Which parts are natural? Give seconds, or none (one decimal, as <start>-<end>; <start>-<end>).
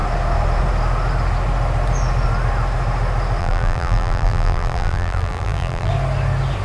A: 0.0-3.4; 5.9-6.6